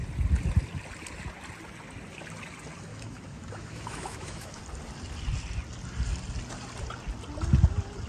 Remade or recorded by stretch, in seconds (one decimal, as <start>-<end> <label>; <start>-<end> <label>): 0.0-2.9 recorded; 2.9-4.6 remade; 4.6-8.1 recorded